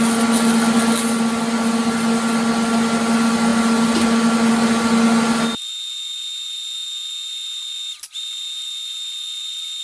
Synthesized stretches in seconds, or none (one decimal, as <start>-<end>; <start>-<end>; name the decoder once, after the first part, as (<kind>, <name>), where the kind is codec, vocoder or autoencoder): none